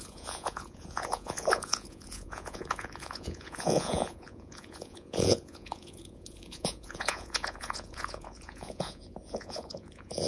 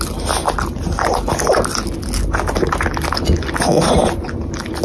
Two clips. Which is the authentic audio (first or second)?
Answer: second